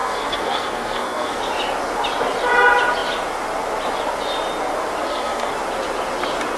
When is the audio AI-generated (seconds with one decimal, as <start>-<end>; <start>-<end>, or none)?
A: 0.0-1.4; 5.0-5.5